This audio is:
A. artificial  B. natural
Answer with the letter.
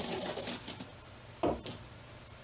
B